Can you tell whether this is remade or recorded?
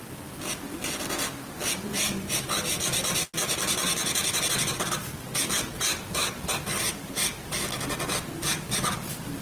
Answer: recorded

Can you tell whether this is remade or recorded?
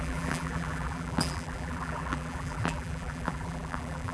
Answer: remade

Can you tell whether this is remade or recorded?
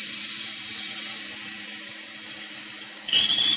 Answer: remade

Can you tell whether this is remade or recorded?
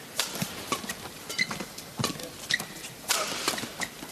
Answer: recorded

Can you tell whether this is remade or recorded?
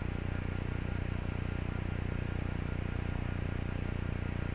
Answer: recorded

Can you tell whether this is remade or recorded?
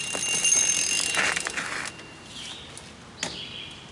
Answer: recorded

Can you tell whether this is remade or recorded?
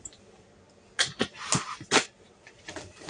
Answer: recorded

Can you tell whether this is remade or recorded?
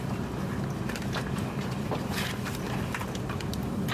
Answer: recorded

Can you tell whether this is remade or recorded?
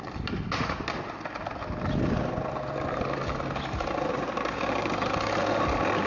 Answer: recorded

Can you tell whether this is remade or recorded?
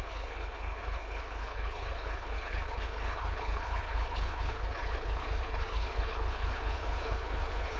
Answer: remade